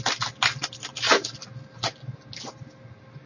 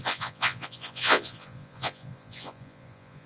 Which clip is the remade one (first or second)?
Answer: second